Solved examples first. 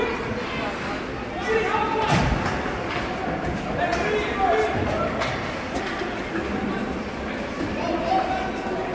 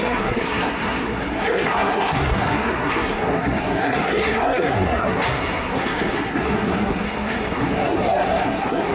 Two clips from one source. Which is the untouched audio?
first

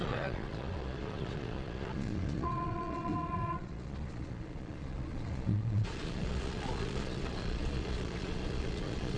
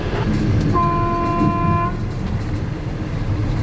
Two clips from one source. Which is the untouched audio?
second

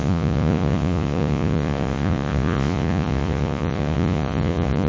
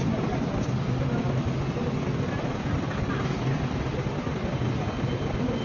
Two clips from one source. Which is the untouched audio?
second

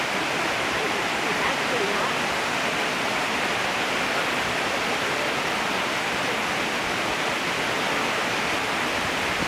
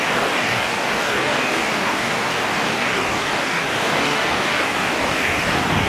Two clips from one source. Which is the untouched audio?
first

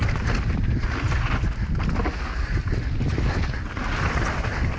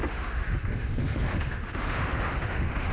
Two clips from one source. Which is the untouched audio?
first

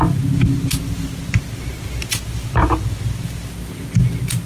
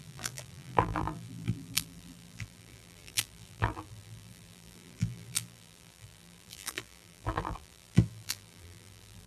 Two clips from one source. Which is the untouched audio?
first